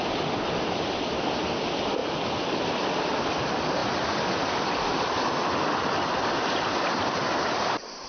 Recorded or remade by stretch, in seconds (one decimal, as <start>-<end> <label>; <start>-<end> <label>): 0.0-8.1 remade